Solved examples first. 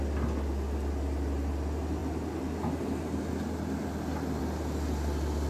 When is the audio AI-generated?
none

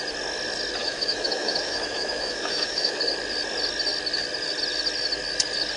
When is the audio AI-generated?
0.8-3.0 (autoencoder, DAC-VAE)

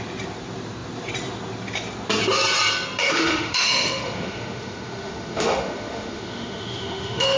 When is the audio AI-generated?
3.0-7.4 (autoencoder, DAC-VAE)